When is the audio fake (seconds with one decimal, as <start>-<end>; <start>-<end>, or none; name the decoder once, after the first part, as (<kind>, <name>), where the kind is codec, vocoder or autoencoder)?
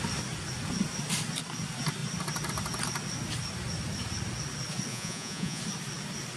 4.9-5.6 (vocoder, Vocos)